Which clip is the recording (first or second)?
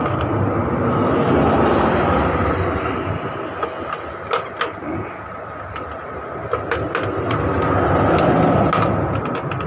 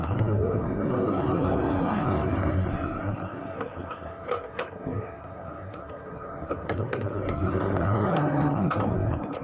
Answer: first